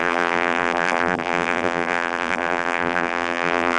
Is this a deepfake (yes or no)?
yes